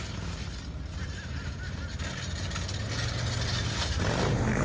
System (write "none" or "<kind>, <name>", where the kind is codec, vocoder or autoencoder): none